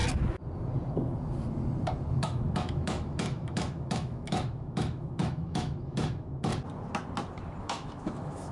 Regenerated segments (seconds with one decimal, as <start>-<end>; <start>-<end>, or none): 2.1-6.5; 7.6-8.5